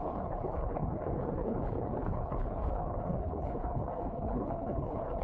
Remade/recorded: remade